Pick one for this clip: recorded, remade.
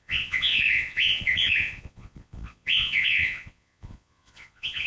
remade